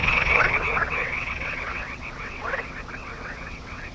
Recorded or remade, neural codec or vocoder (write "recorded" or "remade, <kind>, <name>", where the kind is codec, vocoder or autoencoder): remade, vocoder, WaveNeXt